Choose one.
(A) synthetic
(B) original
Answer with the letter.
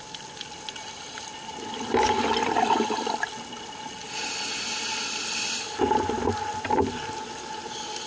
B